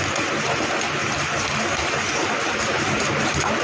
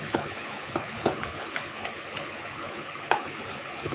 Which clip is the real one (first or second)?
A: first